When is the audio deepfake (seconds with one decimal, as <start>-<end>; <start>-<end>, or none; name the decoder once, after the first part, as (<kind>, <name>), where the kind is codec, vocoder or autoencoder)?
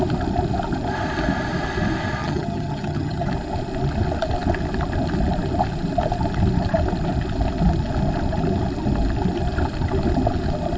2.2-3.3 (vocoder, HiFi-GAN)